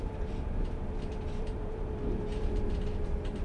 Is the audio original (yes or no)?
no